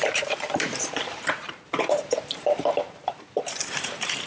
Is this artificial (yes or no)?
yes